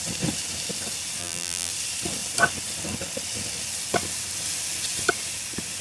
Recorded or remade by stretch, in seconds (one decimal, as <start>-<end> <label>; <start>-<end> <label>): 0.0-1.2 recorded; 1.2-1.7 remade; 1.7-5.8 recorded